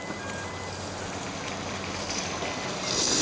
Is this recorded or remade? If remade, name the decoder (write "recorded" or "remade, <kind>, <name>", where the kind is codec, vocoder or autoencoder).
recorded